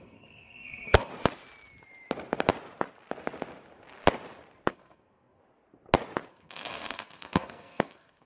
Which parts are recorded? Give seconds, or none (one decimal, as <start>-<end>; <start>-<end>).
1.1-4.7; 5.4-6.3